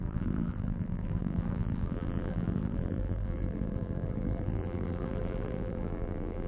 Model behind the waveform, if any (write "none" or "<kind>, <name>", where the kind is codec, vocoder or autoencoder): vocoder, BigVGAN v2